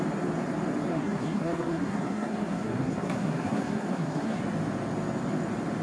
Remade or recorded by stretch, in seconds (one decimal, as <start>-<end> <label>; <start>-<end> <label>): 0.0-0.9 recorded; 0.9-4.4 remade; 4.4-5.8 recorded